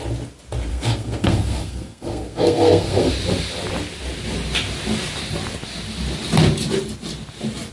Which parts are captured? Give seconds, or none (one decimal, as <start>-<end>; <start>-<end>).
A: 0.0-0.7; 3.1-7.7

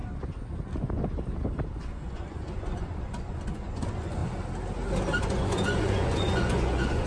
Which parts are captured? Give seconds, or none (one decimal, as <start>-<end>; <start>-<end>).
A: 0.0-1.8; 4.2-5.2